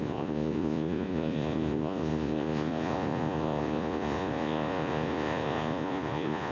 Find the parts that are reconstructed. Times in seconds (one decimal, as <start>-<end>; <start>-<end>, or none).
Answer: 0.0-6.5

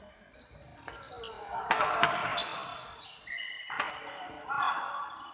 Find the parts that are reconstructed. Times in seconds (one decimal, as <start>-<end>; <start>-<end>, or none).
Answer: none